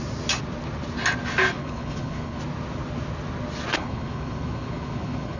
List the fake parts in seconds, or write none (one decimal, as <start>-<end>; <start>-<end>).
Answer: 1.6-2.4; 3.7-5.4